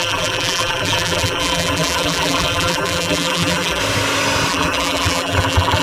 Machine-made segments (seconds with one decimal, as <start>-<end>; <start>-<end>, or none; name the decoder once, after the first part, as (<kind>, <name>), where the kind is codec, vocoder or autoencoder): 0.0-3.8 (vocoder, BigVGAN v2); 4.5-5.8

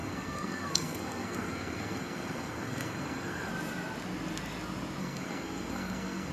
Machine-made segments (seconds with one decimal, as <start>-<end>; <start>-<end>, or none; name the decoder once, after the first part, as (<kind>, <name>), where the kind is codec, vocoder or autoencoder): 0.0-3.5 (codec, SNAC); 5.0-6.3

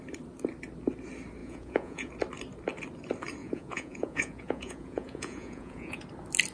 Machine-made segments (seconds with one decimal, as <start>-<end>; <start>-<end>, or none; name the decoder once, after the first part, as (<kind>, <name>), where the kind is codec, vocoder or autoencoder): 1.4-2.1 (vocoder, Vocos); 3.4-6.0

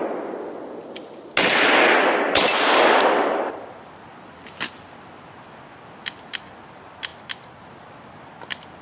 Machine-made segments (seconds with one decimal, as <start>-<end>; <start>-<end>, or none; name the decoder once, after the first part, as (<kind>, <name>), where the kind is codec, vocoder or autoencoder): none

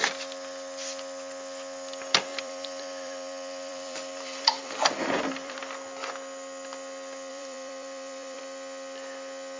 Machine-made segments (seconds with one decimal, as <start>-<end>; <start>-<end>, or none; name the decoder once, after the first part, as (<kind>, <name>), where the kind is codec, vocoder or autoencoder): 2.3-5.6 (vocoder, BigVGAN v2); 7.3-8.4

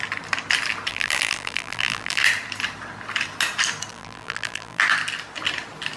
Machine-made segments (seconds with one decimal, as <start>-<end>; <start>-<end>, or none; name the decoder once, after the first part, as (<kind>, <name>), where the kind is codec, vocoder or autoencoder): 0.9-2.2 (vocoder, BigVGAN v2); 3.9-4.8